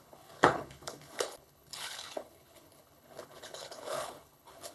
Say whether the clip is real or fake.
fake